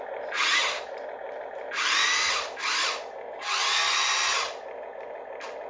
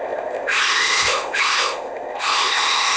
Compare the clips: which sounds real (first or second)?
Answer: first